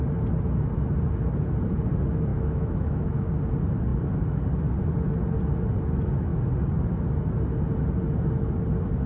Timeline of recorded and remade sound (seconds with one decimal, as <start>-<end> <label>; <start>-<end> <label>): 0.0-2.3 recorded; 2.3-3.3 remade; 3.3-9.1 recorded